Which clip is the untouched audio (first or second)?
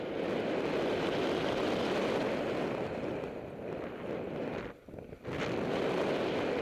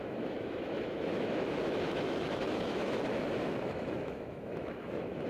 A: first